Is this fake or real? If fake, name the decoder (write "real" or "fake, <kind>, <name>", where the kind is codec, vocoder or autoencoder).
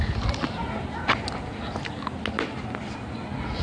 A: real